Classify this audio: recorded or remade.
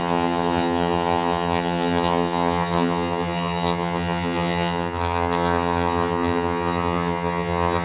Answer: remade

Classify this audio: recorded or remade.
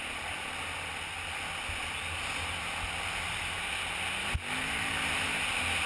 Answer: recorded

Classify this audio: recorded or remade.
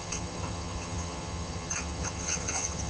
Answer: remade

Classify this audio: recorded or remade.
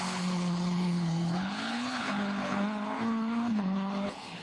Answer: remade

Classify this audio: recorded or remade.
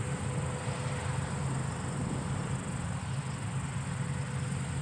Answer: recorded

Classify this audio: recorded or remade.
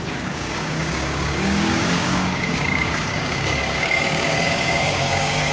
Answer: remade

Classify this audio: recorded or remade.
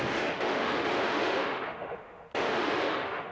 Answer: remade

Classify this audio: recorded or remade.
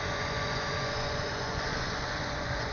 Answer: remade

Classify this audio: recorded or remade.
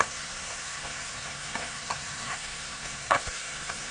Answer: remade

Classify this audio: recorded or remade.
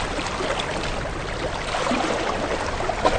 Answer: recorded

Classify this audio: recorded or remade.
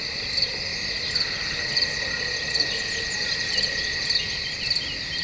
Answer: recorded